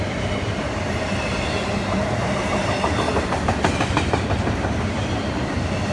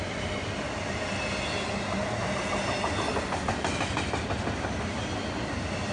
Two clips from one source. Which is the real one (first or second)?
second